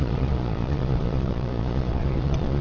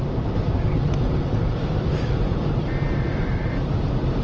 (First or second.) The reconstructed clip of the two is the first